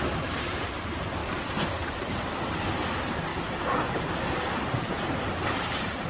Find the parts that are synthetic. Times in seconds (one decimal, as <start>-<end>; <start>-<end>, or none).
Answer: 0.0-3.3; 3.9-6.1

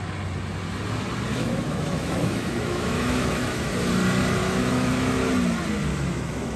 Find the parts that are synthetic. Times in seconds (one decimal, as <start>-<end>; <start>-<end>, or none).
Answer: 1.3-3.7; 4.4-5.3; 5.9-6.6

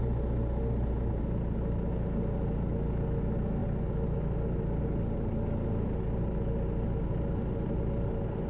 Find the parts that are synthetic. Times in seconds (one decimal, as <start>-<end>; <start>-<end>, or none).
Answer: none

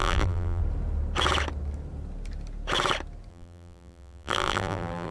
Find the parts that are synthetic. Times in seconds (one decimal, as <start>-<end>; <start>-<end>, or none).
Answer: 0.0-0.6; 3.3-5.1

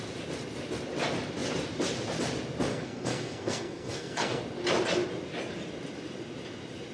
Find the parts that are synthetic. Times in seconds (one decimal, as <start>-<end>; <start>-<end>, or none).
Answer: 2.7-4.4